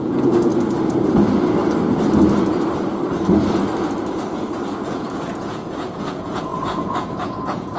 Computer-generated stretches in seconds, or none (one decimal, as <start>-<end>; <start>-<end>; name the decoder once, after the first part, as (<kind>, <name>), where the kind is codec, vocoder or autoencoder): 0.0-0.5 (vocoder, Vocos); 4.8-7.8